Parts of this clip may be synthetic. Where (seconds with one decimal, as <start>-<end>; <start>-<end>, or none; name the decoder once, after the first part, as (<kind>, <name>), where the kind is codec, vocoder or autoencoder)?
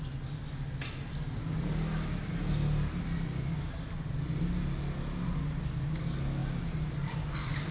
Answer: none